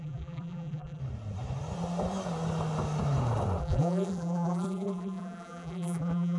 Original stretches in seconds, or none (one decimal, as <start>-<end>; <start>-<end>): 1.0-3.6

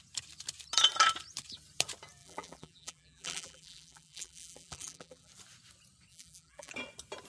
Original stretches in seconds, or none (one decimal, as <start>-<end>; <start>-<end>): 0.0-2.2; 5.3-6.1; 6.7-7.3

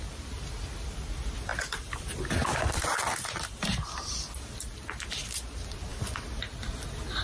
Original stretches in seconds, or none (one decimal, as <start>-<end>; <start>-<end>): 0.0-1.5; 4.6-7.2

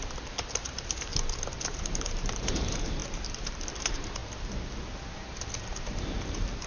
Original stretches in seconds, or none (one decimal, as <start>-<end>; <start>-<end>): 1.1-1.8; 4.2-5.8

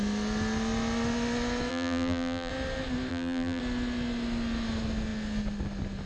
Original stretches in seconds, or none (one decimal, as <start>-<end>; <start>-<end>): 0.0-1.7; 2.5-3.1; 3.6-6.1

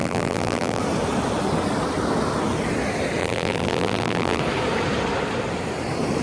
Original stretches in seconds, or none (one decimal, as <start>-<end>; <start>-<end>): 0.8-3.2; 4.4-6.2

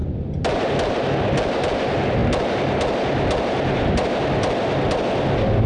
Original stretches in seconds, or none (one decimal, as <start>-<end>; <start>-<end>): 0.7-5.7